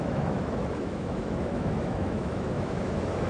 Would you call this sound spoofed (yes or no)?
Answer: yes